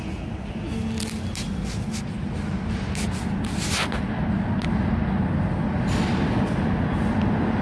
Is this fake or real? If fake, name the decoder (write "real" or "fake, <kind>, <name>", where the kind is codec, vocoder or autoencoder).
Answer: real